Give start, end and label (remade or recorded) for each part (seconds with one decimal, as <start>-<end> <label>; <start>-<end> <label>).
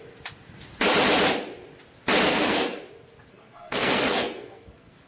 0.0-2.3 recorded; 2.3-2.8 remade; 2.8-3.3 recorded; 3.3-5.1 remade